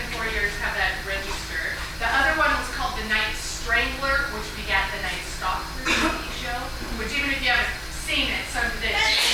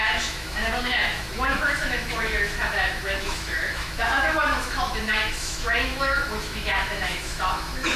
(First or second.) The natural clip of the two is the first